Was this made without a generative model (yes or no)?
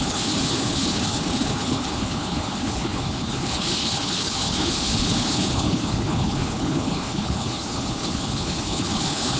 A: no